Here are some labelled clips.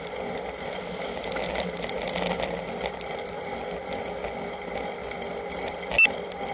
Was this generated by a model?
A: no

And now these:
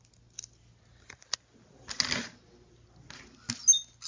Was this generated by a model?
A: no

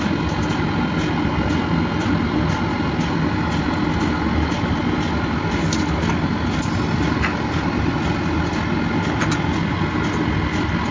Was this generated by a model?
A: no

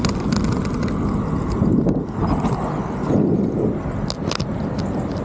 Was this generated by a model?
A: no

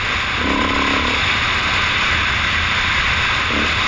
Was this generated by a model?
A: no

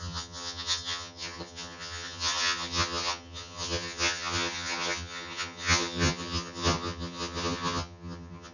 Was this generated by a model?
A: yes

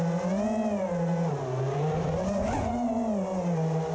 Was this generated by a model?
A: no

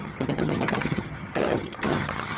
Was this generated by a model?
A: yes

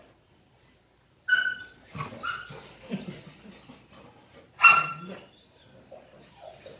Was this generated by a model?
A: no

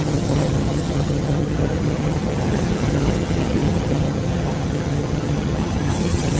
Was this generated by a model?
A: yes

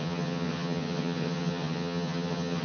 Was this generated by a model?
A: yes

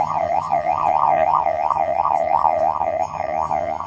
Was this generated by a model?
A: yes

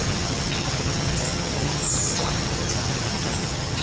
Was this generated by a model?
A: yes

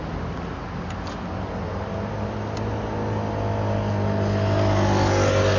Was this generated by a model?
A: no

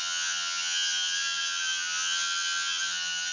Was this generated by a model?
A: yes